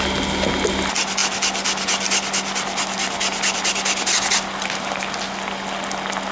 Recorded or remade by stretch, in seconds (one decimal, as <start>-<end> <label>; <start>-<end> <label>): 0.0-6.3 recorded